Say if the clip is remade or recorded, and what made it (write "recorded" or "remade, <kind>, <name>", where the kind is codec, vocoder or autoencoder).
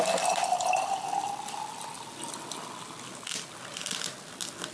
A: recorded